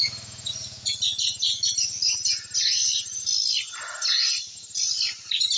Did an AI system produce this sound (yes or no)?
no